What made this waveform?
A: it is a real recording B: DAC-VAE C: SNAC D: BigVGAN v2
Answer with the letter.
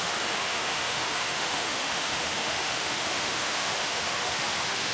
B